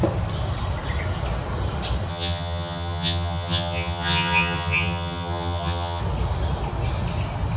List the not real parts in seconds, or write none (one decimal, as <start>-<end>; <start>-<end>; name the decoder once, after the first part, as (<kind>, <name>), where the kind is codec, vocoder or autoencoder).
2.1-6.0 (vocoder, HiFi-GAN)